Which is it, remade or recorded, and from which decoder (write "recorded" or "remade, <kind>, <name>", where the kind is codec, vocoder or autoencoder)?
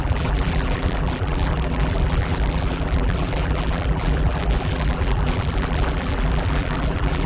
remade, vocoder, BigVGAN v2